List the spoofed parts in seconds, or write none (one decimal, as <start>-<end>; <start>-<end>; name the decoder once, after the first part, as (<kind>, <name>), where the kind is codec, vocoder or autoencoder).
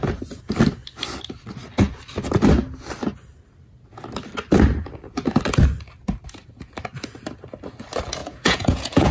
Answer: 8.2-9.1 (vocoder, Vocos)